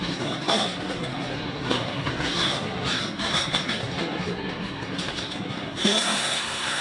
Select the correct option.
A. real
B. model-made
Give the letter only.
B